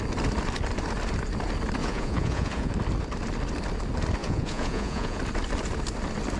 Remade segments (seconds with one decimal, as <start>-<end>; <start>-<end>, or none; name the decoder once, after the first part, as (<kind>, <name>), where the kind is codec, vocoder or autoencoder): 1.8-2.7 (vocoder, Vocos); 4.2-5.2